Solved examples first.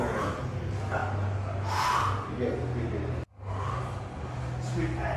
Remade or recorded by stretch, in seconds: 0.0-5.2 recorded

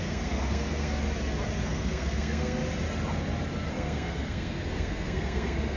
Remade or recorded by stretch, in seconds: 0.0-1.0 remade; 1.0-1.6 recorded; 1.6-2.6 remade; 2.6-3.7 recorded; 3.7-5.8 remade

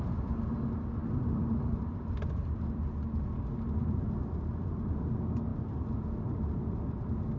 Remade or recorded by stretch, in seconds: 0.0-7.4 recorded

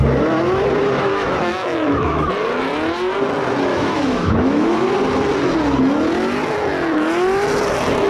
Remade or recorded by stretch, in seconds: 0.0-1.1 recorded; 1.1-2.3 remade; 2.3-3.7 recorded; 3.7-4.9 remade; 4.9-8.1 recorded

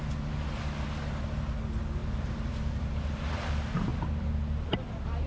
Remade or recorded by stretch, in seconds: 0.0-2.0 recorded; 2.0-3.5 remade; 3.5-3.9 recorded; 3.9-4.7 remade; 4.7-5.3 recorded